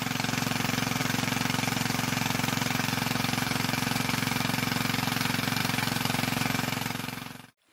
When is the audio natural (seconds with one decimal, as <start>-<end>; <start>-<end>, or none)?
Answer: none